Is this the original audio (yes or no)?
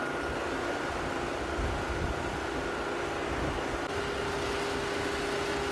yes